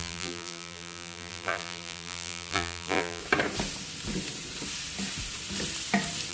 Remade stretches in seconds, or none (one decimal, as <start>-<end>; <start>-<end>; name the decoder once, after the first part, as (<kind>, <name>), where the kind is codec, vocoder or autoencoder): 0.0-3.2 (vocoder, BigVGAN v2)